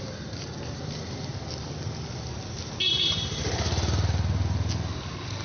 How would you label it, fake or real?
real